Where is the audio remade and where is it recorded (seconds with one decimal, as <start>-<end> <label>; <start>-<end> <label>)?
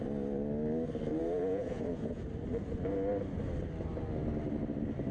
0.0-1.2 recorded; 1.2-2.2 remade; 2.2-5.1 recorded